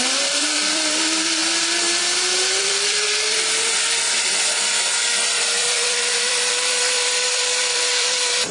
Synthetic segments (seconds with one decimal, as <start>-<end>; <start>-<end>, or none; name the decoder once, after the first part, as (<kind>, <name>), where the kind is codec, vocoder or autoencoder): 0.0-1.4 (vocoder, BigVGAN v2); 2.6-8.5